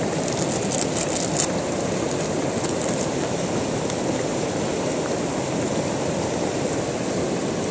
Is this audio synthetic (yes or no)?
no